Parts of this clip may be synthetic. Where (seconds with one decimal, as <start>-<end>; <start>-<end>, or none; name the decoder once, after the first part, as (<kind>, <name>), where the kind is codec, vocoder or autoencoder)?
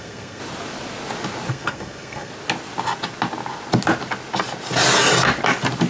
0.0-0.4 (codec, SNAC); 1.5-2.3